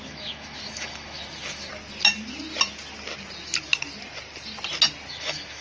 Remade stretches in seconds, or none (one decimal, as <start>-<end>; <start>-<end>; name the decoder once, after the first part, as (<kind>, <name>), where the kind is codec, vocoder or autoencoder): 0.0-1.7 (autoencoder, DAC-VAE); 5.1-5.6